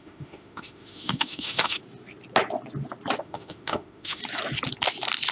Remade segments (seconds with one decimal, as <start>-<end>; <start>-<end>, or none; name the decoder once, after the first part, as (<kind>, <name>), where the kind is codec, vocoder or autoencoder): 0.0-1.8 (autoencoder, DAC-VAE); 3.2-4.2